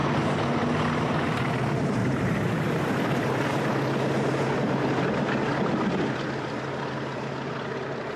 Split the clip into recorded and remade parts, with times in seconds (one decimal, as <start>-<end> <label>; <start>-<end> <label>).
0.0-2.0 recorded; 2.0-3.7 remade; 3.7-8.2 recorded